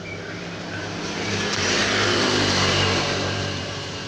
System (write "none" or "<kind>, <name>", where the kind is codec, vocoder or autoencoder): vocoder, BigVGAN v2